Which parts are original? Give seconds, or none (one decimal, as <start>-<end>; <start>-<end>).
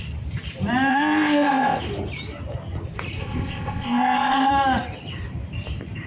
0.0-0.9; 1.8-3.2; 4.5-6.1